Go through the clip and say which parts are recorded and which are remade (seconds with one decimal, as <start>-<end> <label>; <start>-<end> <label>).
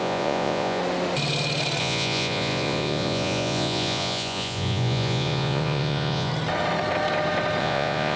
0.0-0.8 remade; 0.8-1.8 recorded; 1.8-6.3 remade; 6.3-7.6 recorded; 7.6-8.2 remade